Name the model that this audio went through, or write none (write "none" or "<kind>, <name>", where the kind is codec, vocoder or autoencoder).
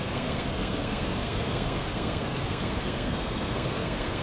codec, SNAC